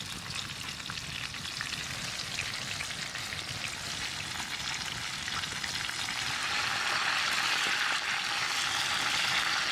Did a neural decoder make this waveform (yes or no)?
no